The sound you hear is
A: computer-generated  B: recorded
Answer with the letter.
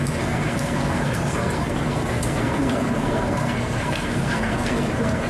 A